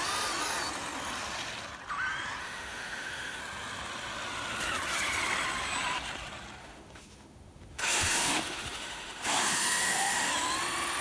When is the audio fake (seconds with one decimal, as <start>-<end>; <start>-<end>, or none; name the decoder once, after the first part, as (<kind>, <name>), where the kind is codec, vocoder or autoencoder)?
2.4-3.4 (autoencoder, DAC-VAE); 6.6-10.3